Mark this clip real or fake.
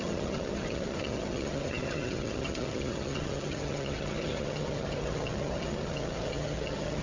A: fake